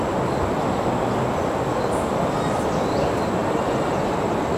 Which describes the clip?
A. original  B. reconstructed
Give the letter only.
A